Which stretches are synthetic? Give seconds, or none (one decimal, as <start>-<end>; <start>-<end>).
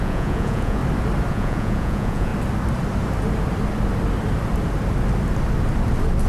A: 0.0-0.8; 1.3-2.3